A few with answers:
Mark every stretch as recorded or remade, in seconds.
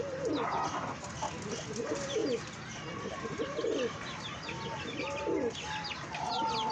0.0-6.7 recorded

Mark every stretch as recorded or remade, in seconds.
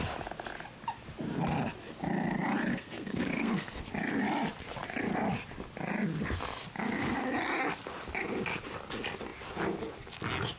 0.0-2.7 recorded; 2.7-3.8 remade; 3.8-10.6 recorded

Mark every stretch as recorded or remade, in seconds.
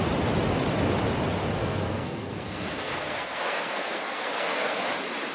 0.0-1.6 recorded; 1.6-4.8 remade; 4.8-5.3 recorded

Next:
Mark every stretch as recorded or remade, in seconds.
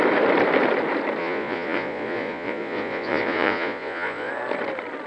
0.0-1.2 recorded; 1.2-4.3 remade; 4.3-5.1 recorded